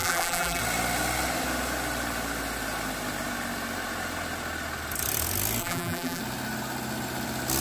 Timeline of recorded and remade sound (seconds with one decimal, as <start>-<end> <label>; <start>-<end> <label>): 0.0-0.6 remade; 0.6-5.6 recorded; 5.6-6.2 remade; 6.2-7.6 recorded